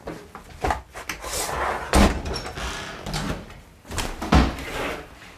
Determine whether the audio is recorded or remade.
recorded